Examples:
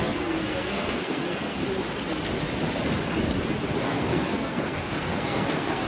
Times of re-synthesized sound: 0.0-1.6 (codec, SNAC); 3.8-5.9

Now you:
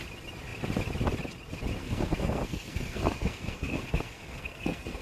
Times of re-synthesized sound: 1.8-5.0 (codec, SNAC)

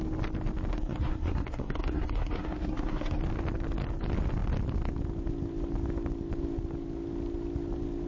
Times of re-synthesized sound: 0.7-3.2 (codec, SNAC)

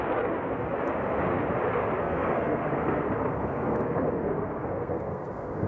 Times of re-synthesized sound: 2.0-5.7 (codec, SNAC)

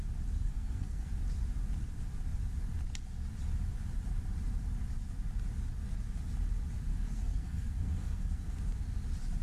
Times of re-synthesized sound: 0.4-1.1 (codec, SNAC); 6.9-8.6

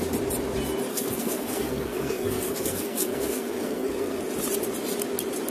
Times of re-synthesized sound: 0.9-4.2 (codec, SNAC)

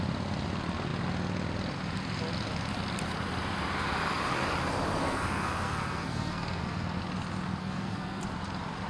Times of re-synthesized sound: 5.0-7.0 (codec, SNAC); 7.6-8.2